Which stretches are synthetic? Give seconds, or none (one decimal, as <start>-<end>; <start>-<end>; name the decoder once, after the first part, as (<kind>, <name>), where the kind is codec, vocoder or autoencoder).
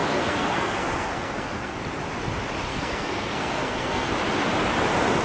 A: 0.0-1.8 (codec, SNAC); 2.7-4.1